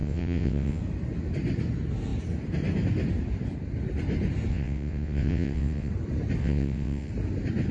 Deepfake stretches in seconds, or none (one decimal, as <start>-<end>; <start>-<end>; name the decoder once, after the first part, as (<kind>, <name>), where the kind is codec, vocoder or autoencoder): 0.0-0.8 (vocoder, WaveNeXt); 4.5-5.9; 6.4-7.1